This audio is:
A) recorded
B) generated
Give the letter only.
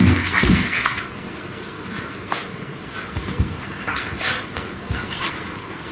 B